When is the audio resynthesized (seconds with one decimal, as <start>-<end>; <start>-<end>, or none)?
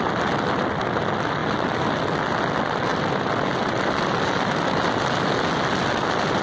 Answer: none